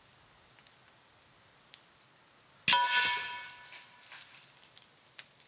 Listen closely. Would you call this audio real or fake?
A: real